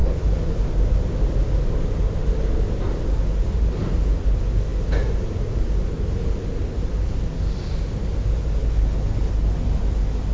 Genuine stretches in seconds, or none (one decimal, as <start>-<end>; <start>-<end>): 0.6-8.6; 9.3-10.3